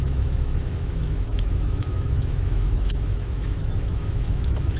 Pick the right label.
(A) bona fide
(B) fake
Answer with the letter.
B